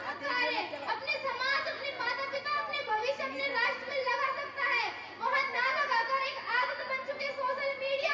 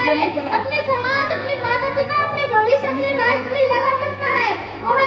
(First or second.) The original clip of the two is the first